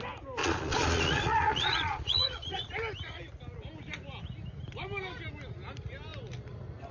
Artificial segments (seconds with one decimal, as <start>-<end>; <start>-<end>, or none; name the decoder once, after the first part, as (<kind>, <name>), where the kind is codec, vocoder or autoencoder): 0.4-2.7 (vocoder, Vocos)

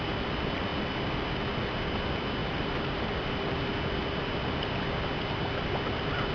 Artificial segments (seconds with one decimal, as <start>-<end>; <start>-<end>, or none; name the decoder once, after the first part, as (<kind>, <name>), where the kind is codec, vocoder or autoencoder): 2.4-3.6 (vocoder, BigVGAN v2)